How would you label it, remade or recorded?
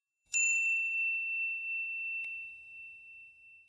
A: remade